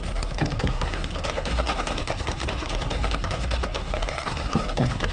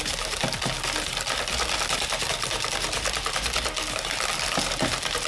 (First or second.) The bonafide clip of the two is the second